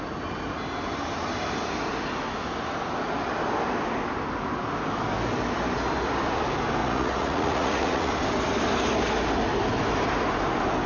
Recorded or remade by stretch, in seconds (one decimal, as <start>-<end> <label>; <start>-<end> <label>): 0.0-6.8 recorded; 6.8-8.1 remade; 8.1-10.9 recorded